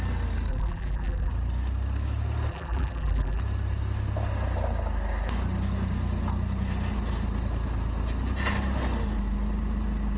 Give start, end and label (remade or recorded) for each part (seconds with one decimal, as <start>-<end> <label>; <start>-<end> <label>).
0.0-0.5 recorded; 0.5-1.3 remade; 1.3-2.5 recorded; 2.5-3.4 remade; 3.4-10.2 recorded